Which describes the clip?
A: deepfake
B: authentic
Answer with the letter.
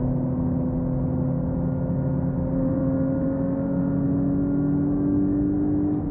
B